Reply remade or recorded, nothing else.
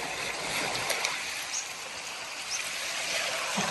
recorded